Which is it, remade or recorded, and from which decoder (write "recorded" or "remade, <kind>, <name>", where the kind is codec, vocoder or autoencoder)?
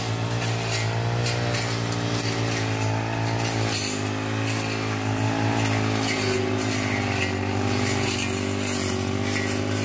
recorded